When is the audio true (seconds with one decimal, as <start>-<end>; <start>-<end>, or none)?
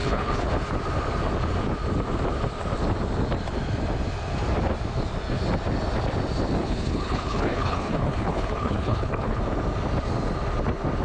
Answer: 0.5-6.6; 9.4-11.0